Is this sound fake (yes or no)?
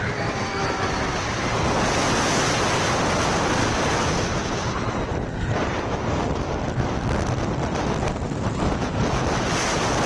no